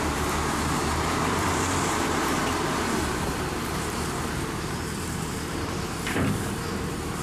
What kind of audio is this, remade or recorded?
remade